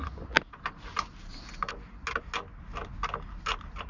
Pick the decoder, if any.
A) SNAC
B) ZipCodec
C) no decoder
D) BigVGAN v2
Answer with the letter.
C